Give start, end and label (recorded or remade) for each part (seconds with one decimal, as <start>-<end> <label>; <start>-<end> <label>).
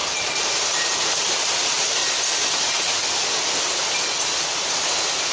0.0-2.0 remade; 2.0-2.5 recorded; 2.5-3.0 remade; 3.0-4.6 recorded; 4.6-5.3 remade